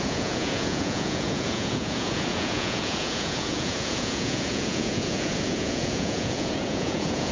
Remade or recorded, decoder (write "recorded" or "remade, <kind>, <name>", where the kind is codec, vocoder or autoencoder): remade, vocoder, Vocos